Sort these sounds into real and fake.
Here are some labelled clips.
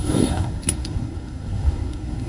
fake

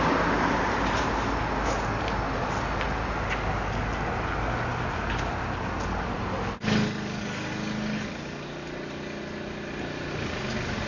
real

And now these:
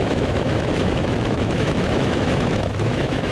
fake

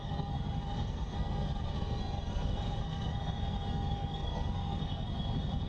fake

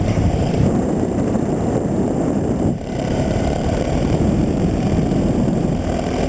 fake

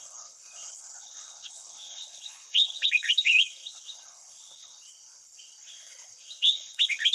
fake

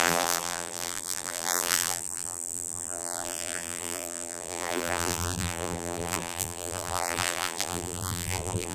fake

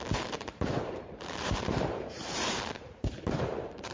fake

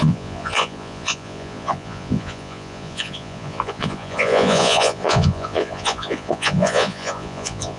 fake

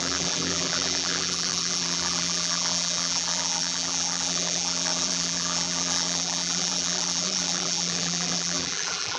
fake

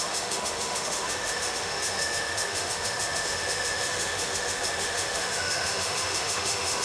fake